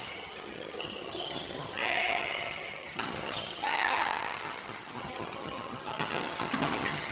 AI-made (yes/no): yes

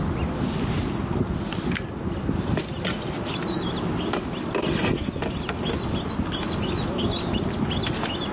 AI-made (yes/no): no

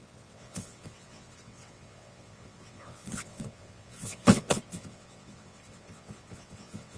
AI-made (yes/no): yes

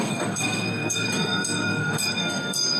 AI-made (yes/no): yes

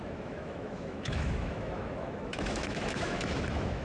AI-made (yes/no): yes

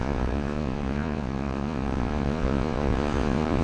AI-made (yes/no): yes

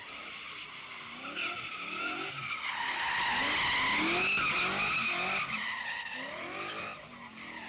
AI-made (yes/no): no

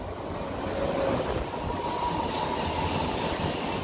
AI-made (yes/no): no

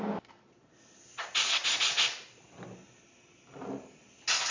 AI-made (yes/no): no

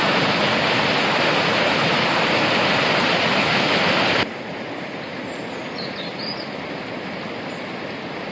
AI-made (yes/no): no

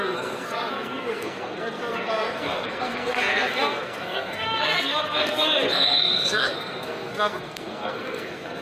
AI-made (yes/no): yes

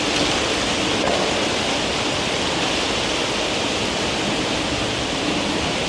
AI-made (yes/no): no